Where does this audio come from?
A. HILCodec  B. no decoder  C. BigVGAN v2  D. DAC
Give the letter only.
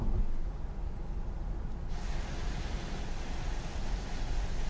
B